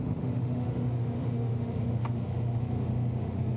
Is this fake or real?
fake